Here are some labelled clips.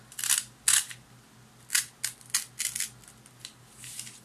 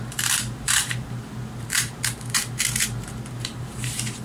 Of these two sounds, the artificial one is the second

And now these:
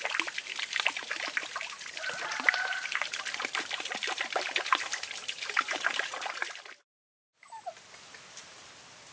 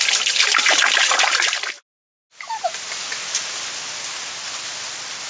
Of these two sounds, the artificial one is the first